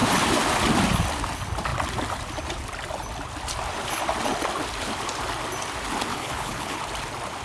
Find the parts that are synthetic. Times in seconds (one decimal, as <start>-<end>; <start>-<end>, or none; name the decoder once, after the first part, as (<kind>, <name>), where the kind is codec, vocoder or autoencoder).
6.1-6.8 (codec, HILCodec)